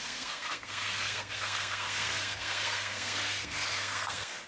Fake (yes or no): yes